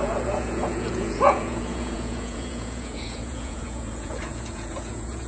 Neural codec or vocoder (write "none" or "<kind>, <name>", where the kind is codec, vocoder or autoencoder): vocoder, Vocos